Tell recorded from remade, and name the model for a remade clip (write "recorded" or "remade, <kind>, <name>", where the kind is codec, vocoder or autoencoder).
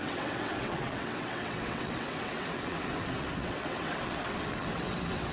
remade, vocoder, WaveNeXt